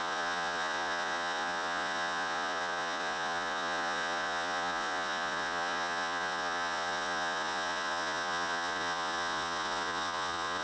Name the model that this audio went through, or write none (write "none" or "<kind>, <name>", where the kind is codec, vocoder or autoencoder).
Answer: vocoder, Vocos